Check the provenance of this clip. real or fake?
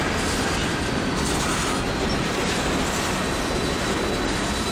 real